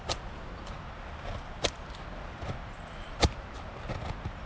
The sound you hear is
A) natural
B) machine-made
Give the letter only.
A